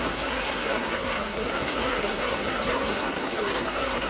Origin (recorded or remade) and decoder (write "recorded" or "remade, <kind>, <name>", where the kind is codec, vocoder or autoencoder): remade, codec, SNAC